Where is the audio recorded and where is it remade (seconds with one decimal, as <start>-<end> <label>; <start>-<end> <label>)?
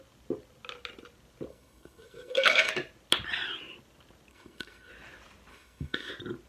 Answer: 0.0-1.5 recorded; 1.5-2.7 remade; 2.7-4.3 recorded; 4.3-4.9 remade; 4.9-5.5 recorded; 5.5-6.1 remade; 6.1-6.5 recorded